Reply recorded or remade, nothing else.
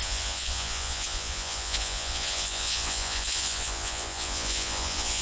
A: remade